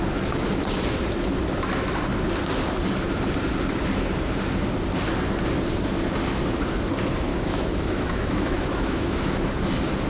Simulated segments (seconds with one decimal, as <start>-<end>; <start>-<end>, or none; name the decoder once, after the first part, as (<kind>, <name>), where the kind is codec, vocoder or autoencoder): 7.3-9.5 (autoencoder, DAC-VAE)